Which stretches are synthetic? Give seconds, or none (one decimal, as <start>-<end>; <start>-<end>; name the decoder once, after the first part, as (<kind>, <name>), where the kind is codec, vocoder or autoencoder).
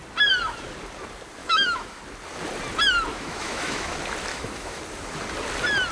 1.4-2.0 (autoencoder, DAC-VAE); 3.1-3.9; 4.3-4.8